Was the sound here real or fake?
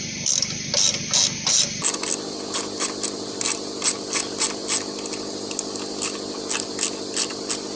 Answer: real